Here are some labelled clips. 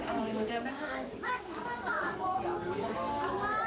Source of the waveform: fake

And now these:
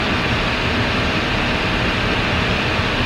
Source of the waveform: real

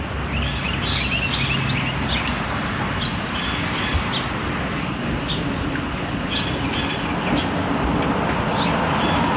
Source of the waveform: real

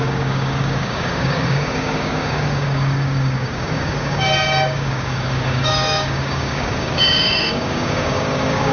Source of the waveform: fake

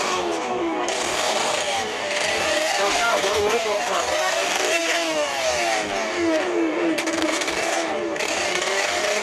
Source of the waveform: fake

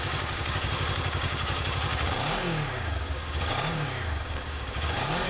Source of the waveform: fake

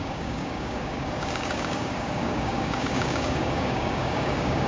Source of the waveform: fake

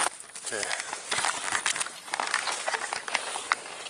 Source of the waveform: real